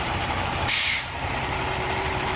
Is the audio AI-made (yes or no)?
yes